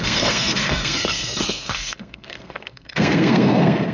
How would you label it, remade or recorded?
remade